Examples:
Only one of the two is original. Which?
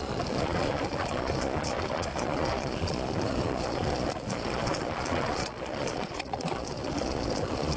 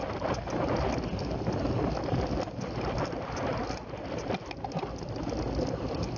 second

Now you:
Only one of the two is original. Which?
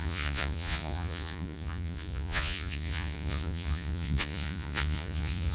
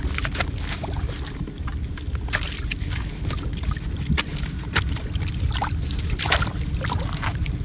second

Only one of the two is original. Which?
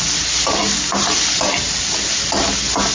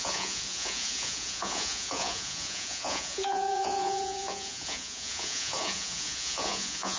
first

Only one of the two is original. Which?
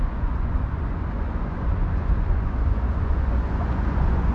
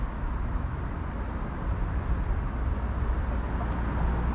second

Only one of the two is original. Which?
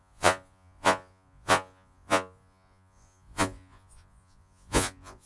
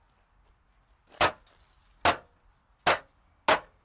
second